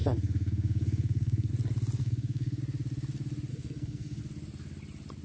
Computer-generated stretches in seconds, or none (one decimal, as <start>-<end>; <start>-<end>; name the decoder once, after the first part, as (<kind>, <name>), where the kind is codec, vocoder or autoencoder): 0.0-1.5 (codec, SNAC); 2.0-2.6; 3.5-4.2